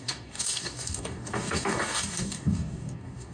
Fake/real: fake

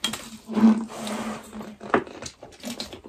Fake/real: real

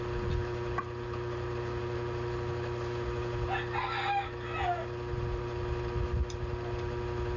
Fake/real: real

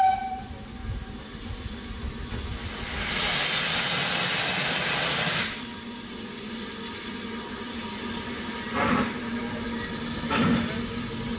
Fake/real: real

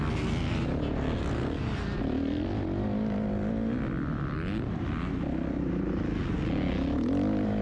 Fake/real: real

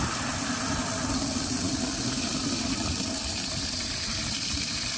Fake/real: real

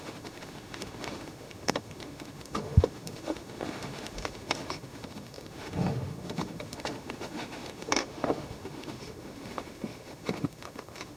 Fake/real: fake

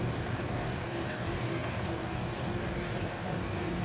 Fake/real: fake